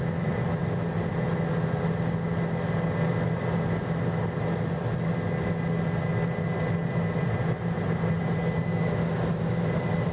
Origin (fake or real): real